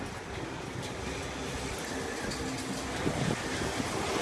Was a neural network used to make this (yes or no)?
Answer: no